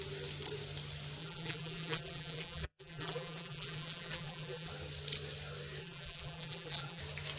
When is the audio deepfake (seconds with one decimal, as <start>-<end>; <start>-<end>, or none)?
1.2-4.7; 5.8-7.0